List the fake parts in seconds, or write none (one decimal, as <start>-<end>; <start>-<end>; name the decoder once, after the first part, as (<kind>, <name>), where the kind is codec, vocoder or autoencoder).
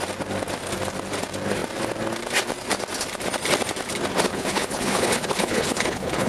4.3-6.3 (codec, HILCodec)